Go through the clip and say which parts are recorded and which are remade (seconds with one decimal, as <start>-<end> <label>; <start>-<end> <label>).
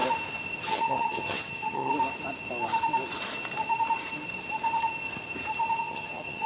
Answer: 0.0-0.6 recorded; 0.6-1.9 remade; 1.9-5.8 recorded; 5.8-6.5 remade